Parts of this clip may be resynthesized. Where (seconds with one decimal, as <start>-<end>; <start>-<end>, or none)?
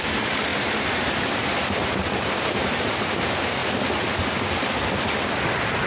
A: none